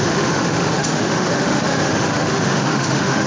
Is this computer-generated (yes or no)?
yes